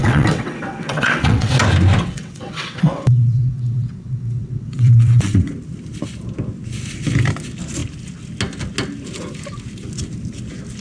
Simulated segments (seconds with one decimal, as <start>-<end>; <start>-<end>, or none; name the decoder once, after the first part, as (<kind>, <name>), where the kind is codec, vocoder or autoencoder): 0.0-1.6 (vocoder, WaveNeXt); 2.0-5.5